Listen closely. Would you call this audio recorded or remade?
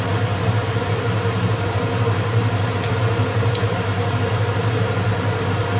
recorded